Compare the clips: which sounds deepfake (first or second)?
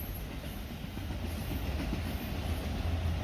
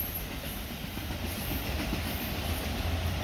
second